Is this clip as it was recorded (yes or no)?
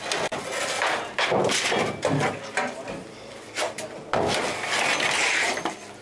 yes